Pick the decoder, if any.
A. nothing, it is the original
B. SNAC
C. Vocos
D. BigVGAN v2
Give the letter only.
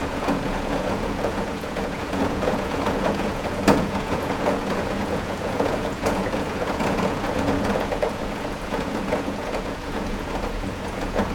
C